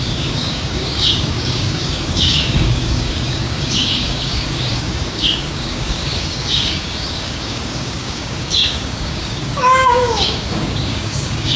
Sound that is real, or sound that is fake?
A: fake